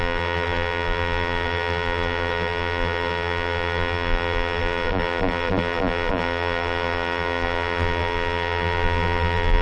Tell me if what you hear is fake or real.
fake